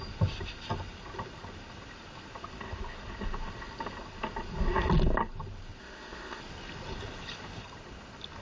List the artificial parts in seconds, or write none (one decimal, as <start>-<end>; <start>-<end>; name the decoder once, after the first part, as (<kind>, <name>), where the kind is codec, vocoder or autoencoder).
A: 5.8-6.4 (codec, ZipCodec)